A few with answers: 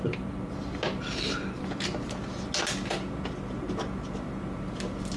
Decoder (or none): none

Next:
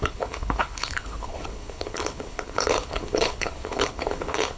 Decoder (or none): codec, HILCodec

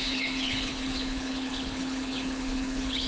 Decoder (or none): codec, HILCodec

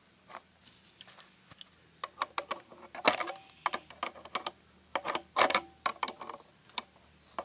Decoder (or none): none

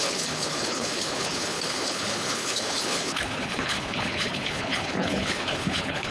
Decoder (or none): codec, HILCodec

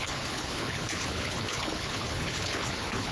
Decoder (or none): codec, HILCodec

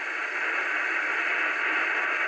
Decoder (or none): none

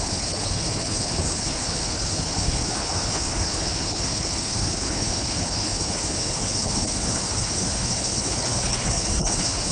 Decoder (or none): codec, HILCodec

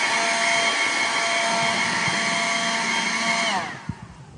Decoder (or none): none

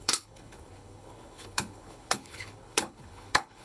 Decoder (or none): codec, HILCodec